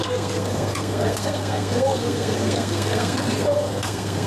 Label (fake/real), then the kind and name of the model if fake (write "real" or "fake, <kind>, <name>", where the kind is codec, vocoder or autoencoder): fake, codec, SNAC